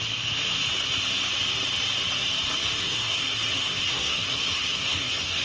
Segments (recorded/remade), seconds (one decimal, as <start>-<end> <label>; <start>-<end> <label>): 0.0-2.8 recorded; 2.8-5.4 remade